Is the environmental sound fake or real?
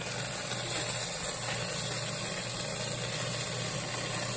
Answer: real